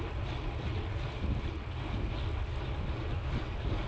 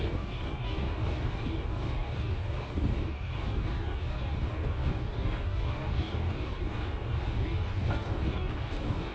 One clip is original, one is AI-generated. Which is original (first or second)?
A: first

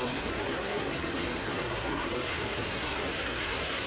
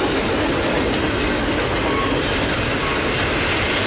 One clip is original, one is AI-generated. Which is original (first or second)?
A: second